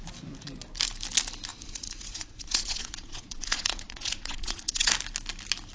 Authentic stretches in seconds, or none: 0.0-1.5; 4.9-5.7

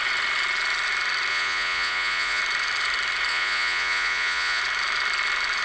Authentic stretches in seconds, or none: 0.0-1.3; 2.4-3.3; 4.6-5.6

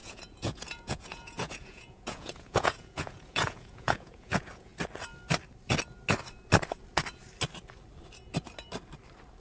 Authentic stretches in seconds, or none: 4.7-9.4

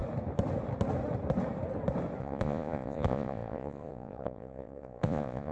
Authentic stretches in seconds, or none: 0.0-2.2

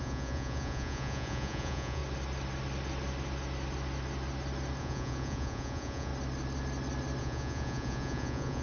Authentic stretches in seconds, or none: 2.0-4.8; 6.1-7.2